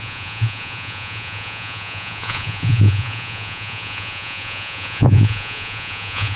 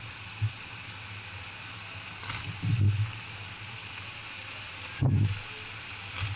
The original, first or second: second